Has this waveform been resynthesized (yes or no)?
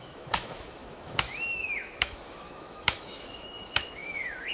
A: yes